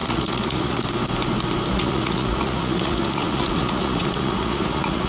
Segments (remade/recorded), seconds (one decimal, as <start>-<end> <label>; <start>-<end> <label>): 0.0-0.8 remade; 0.8-1.7 recorded; 1.7-5.1 remade